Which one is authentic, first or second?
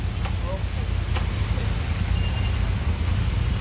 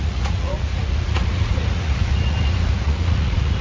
first